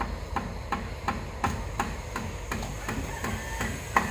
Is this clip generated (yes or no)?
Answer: no